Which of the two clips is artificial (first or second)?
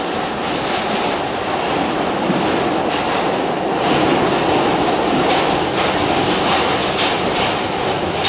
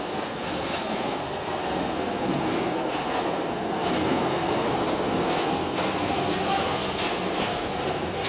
second